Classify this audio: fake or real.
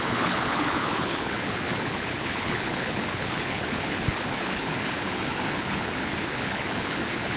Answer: fake